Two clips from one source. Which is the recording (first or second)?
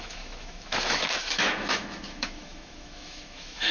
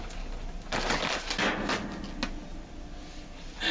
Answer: second